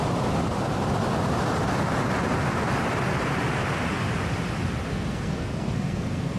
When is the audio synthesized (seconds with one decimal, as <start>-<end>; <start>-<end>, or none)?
4.9-6.4